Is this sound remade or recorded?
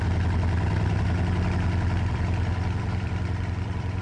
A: remade